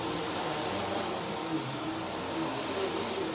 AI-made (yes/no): no